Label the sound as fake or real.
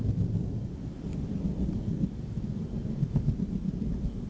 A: real